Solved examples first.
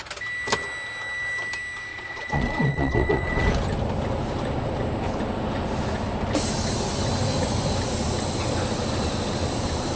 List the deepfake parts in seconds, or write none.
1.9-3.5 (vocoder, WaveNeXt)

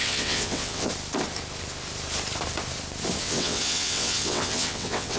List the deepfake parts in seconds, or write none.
0.0-0.9 (vocoder, WaveNeXt); 3.2-5.2